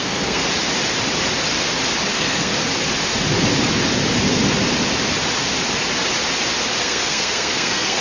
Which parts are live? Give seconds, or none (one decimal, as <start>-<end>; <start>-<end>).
0.4-2.1; 2.5-6.8